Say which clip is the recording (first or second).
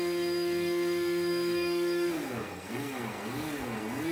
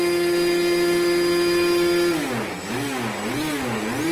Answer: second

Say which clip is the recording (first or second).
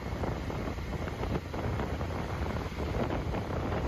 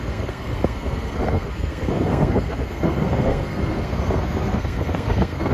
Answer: first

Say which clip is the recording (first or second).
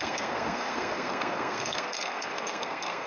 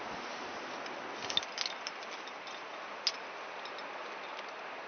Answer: second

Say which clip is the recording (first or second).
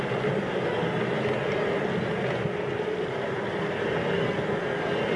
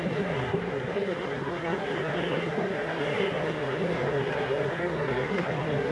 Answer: first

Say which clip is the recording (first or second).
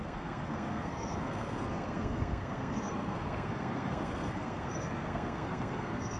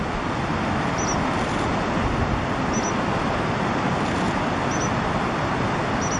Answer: second